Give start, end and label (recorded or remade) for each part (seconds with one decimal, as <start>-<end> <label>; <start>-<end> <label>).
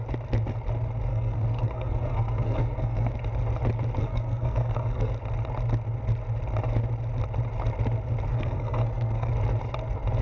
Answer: 0.0-1.1 recorded; 1.1-3.1 remade; 3.1-4.0 recorded; 4.0-5.1 remade; 5.1-8.3 recorded; 8.3-9.3 remade; 9.3-10.2 recorded